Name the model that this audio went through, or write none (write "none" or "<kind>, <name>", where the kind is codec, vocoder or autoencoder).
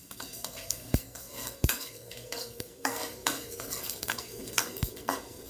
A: codec, SNAC